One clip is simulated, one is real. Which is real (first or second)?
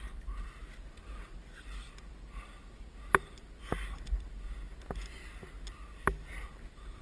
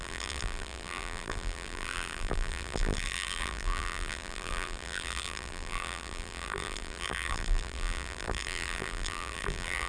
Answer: first